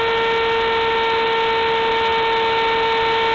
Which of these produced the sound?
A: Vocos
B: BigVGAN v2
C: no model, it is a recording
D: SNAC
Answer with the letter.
C